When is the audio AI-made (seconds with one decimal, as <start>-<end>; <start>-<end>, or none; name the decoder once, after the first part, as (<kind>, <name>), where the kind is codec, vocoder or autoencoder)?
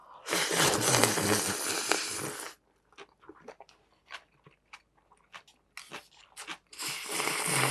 none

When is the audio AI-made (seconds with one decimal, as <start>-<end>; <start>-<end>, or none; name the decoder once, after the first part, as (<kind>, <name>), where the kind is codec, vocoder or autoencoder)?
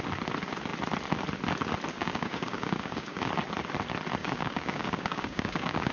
1.9-3.3 (codec, DAC); 4.2-5.9